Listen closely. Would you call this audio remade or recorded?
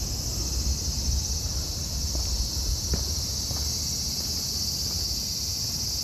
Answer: recorded